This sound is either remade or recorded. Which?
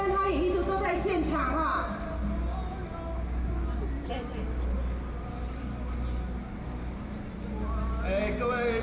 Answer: recorded